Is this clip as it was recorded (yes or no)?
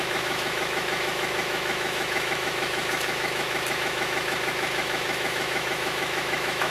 no